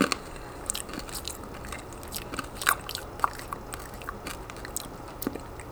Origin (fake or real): real